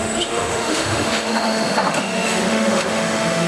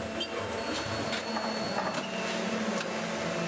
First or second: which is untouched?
second